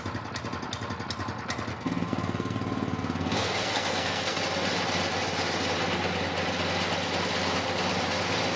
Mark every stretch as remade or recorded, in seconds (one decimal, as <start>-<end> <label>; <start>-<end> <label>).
0.0-1.7 recorded; 1.7-4.4 remade; 4.4-8.6 recorded